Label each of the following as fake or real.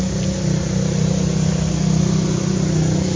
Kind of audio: real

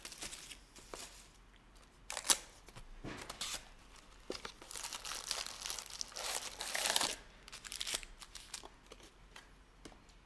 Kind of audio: real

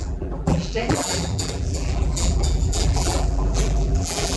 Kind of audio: fake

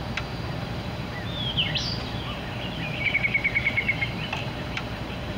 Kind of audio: fake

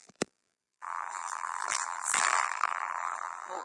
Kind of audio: fake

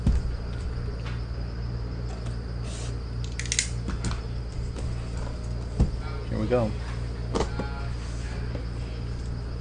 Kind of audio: real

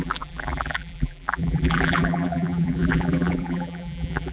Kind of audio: fake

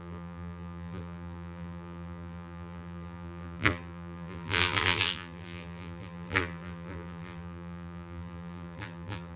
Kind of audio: fake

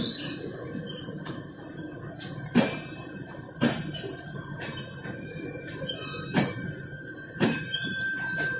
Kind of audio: fake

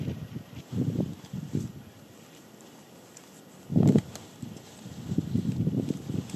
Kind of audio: real